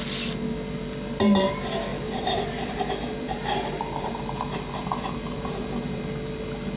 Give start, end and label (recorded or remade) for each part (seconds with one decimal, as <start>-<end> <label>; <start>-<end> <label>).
0.0-1.9 recorded; 1.9-6.0 remade; 6.0-6.8 recorded